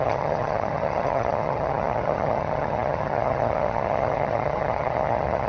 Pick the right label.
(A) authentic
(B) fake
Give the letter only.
B